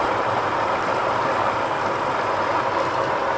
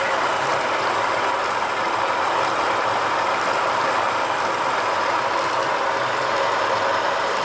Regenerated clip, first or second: first